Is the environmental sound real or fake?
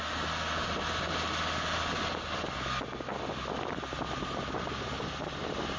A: real